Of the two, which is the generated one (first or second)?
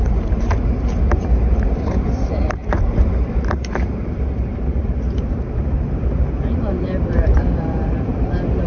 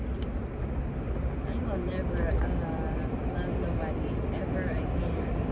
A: first